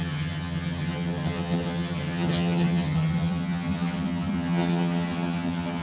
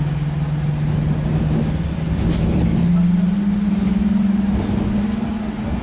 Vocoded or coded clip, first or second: first